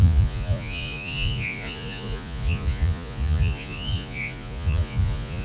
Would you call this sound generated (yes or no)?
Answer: yes